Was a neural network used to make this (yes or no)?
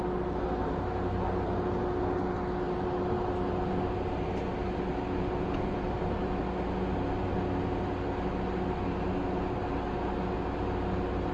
no